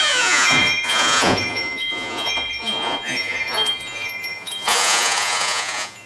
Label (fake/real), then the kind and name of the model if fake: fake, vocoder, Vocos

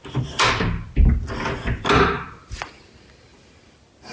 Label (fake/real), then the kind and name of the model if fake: real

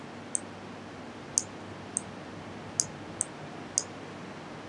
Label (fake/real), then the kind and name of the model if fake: real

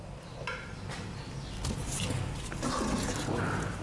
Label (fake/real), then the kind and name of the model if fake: real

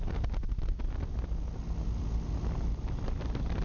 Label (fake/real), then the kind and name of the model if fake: real